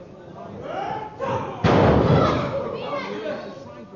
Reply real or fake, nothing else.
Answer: real